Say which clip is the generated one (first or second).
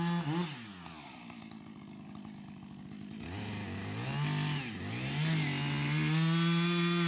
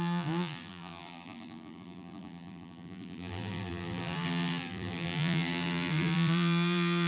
second